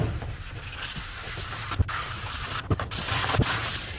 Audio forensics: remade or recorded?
remade